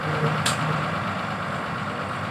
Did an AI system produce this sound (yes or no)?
no